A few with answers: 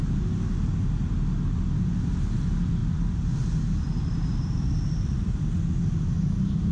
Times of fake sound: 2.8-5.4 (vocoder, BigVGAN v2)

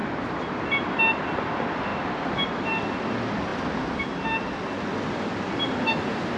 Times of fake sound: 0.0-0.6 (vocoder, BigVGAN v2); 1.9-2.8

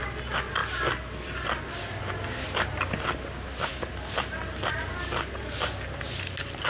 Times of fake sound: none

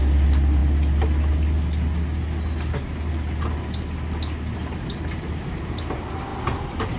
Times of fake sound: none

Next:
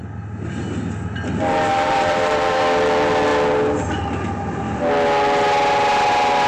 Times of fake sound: 1.7-2.6 (vocoder, BigVGAN v2)

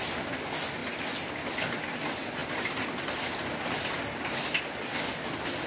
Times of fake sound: 0.8-1.3 (vocoder, BigVGAN v2)

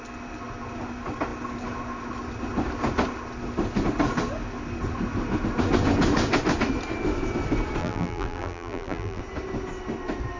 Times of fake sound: 7.8-9.2 (vocoder, BigVGAN v2)